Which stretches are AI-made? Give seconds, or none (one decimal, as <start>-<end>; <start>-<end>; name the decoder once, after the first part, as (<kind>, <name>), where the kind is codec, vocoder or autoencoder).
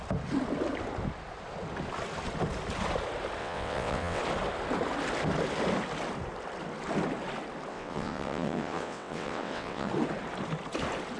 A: 3.4-4.2 (vocoder, WaveNeXt); 7.7-9.9